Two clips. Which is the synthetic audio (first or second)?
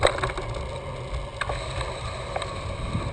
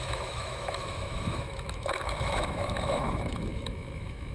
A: second